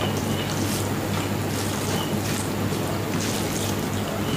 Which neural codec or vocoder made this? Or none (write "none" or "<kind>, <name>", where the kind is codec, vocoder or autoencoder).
none